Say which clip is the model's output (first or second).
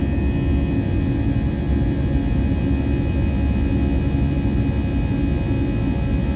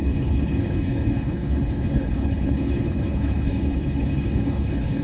second